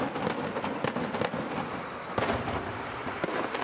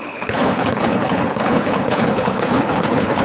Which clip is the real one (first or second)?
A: first